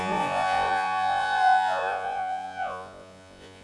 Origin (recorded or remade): remade